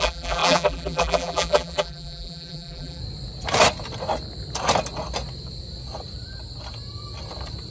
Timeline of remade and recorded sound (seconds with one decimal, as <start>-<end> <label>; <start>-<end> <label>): 0.0-3.0 remade; 3.0-7.7 recorded